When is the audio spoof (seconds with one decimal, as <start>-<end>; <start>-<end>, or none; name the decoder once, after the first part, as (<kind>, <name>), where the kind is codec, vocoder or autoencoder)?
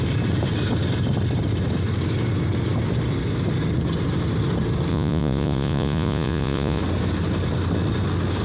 4.9-6.8 (vocoder, Vocos)